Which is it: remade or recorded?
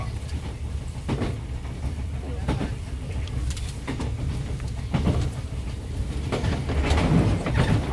recorded